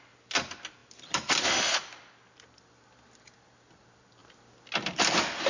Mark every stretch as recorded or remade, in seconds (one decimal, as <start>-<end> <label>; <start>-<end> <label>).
0.0-5.5 recorded

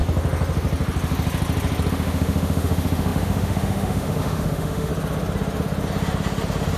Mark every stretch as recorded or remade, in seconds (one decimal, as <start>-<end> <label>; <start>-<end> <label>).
0.0-1.9 recorded; 1.9-4.9 remade; 4.9-6.8 recorded

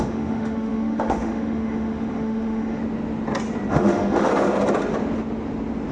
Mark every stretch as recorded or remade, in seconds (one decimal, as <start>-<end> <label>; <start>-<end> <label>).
0.0-2.8 remade; 2.8-3.7 recorded; 3.7-4.3 remade; 4.3-5.9 recorded

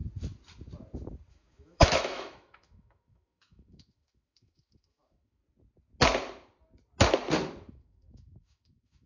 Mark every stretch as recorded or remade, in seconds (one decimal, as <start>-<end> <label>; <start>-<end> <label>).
0.0-1.3 recorded; 1.3-5.4 remade; 5.4-7.7 recorded; 7.7-9.1 remade